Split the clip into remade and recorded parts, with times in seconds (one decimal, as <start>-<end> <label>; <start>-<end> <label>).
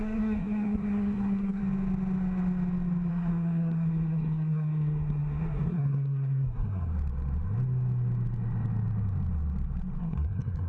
0.0-1.6 remade; 1.6-3.1 recorded; 3.1-6.9 remade; 6.9-10.0 recorded; 10.0-10.7 remade